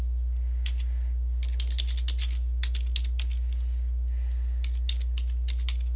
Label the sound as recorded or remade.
recorded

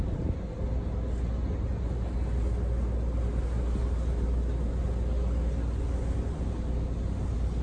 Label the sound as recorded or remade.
recorded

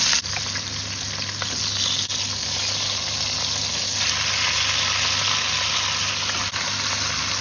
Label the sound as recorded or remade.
recorded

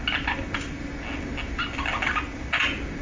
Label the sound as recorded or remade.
recorded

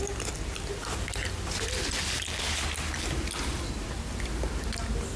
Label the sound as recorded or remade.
recorded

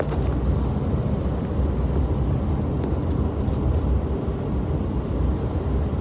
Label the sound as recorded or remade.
recorded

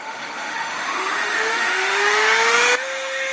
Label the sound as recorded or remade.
remade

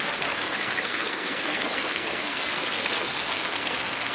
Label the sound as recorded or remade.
remade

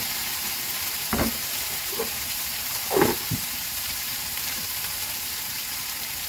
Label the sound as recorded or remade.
remade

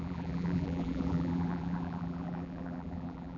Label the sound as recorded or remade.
remade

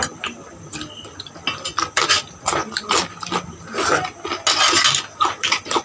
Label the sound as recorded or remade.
recorded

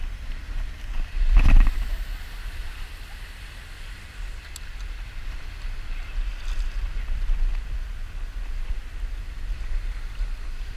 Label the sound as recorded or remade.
recorded